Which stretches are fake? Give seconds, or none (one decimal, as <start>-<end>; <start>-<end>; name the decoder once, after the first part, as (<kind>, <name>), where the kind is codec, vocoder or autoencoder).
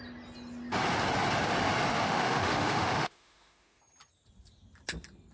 1.9-3.8 (autoencoder, DAC-VAE)